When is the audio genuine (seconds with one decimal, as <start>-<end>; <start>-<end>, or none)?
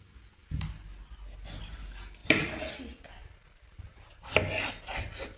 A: 0.0-2.2; 2.7-3.2; 4.1-5.4